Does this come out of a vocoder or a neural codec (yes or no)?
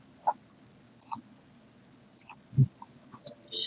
no